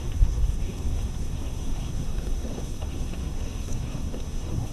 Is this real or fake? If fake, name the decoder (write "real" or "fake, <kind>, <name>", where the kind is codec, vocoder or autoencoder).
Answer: fake, codec, SNAC